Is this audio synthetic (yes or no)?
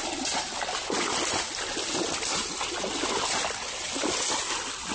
no